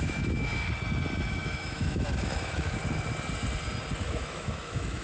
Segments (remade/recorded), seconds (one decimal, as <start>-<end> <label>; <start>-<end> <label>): 0.0-0.5 remade; 0.5-1.3 recorded; 1.3-2.8 remade; 2.8-4.0 recorded; 4.0-5.0 remade